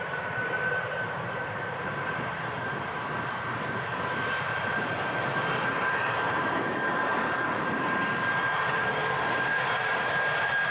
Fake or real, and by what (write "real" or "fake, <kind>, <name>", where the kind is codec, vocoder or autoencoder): fake, vocoder, BigVGAN v2